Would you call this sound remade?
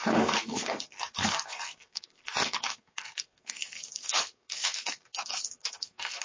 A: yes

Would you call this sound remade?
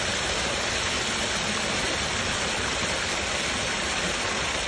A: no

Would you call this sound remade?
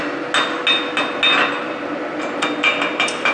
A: no